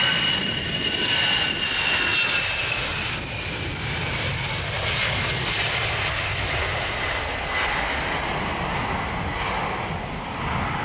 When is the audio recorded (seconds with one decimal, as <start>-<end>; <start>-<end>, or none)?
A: 0.0-10.8

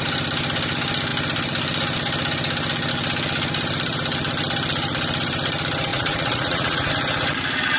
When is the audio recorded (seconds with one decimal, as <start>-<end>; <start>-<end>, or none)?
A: 0.0-5.9; 6.9-7.8

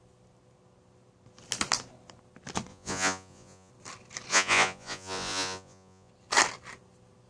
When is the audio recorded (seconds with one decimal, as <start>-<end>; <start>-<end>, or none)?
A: 0.0-2.7; 3.7-4.3; 6.1-7.3

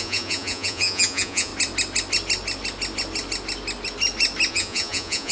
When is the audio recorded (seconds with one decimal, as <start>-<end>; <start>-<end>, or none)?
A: 1.5-4.5

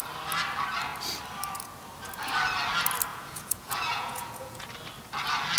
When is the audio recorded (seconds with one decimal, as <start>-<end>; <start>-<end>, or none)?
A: 0.0-3.1; 4.7-5.6

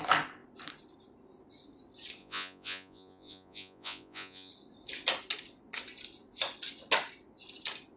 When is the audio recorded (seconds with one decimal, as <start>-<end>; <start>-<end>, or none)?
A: 0.0-2.2; 4.5-8.0

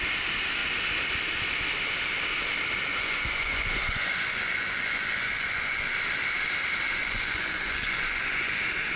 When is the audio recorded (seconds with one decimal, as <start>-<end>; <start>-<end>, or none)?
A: 0.0-2.9; 5.8-7.0; 8.6-9.0

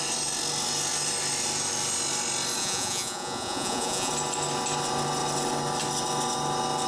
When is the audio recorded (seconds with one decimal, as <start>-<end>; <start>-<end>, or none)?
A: 0.0-2.6; 4.1-6.9